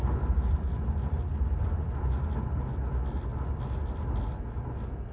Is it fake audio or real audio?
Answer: real